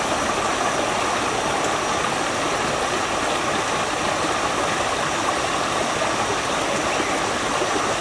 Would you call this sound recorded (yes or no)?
yes